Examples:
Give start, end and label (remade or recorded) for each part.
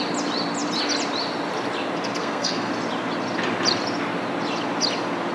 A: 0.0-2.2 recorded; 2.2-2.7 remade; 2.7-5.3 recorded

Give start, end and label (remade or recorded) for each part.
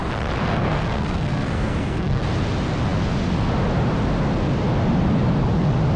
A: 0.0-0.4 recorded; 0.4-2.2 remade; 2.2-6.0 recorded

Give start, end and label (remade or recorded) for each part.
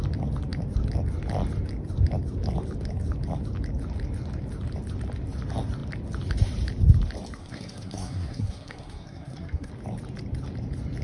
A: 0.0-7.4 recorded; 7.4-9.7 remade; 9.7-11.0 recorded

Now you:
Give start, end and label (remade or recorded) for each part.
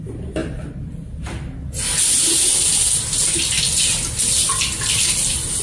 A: 0.0-5.6 recorded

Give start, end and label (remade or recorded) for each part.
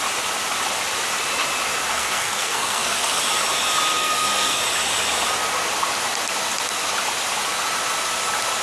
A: 0.0-1.9 recorded; 1.9-3.2 remade; 3.2-3.9 recorded; 3.9-4.6 remade; 4.6-8.6 recorded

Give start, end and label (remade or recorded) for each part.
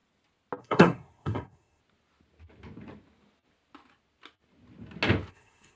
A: 0.0-0.6 recorded; 0.6-1.8 remade; 1.8-5.3 recorded; 5.3-5.8 remade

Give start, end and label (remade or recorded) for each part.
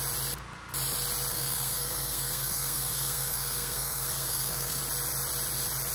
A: 0.0-1.3 recorded; 1.3-4.8 remade; 4.8-5.9 recorded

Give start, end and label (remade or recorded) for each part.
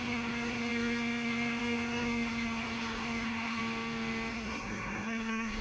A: 0.0-3.6 remade; 3.6-4.3 recorded; 4.3-5.6 remade